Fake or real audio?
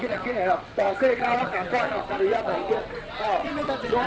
fake